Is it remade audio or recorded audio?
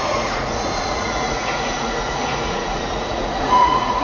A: remade